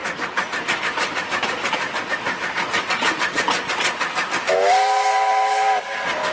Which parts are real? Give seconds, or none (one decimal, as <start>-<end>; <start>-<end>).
0.0-6.3